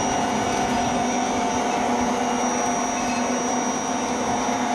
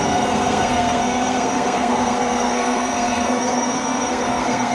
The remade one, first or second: second